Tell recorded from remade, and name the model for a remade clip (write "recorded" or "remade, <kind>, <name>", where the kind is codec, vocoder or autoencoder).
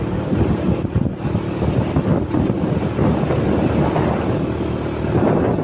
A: recorded